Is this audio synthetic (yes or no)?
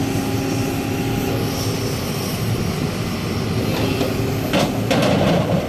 no